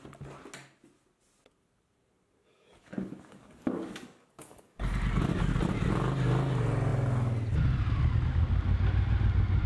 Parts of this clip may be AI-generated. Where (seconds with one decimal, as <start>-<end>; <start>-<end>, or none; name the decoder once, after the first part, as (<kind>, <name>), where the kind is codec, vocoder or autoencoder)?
2.4-5.2 (codec, DAC)